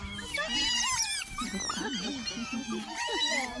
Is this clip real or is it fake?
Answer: real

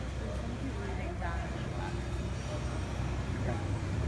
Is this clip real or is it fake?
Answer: real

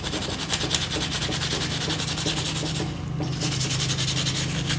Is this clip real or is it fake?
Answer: real